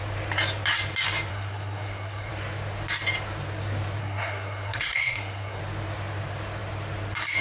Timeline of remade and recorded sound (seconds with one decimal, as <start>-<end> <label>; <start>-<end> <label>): 0.0-1.3 recorded; 1.3-2.3 remade; 2.3-4.0 recorded; 4.0-5.6 remade; 5.6-7.4 recorded